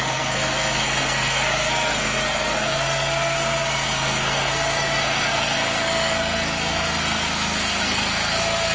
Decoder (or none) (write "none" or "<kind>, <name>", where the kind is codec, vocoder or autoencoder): codec, SNAC